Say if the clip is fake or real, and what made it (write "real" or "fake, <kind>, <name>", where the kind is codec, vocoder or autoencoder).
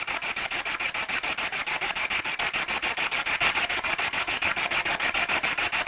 real